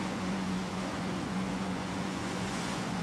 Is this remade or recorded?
remade